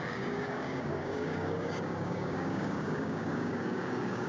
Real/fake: fake